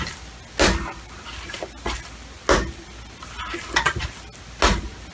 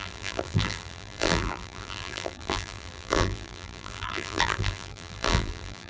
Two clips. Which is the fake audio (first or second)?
second